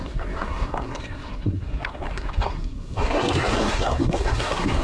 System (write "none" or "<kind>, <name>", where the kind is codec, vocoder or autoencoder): codec, SNAC